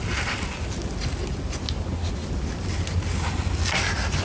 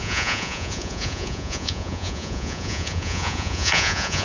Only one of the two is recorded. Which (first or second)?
first